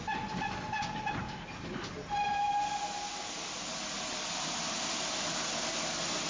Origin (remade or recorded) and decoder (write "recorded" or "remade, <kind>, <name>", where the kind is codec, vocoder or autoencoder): recorded